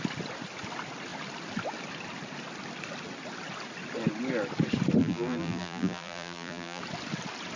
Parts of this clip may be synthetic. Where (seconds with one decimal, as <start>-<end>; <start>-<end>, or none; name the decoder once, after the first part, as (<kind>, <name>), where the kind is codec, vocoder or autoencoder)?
5.0-6.8 (vocoder, BigVGAN v2)